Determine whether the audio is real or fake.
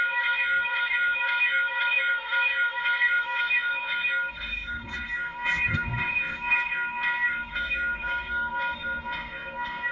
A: fake